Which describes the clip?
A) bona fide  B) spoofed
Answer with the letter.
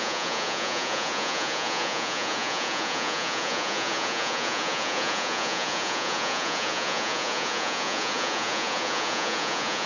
B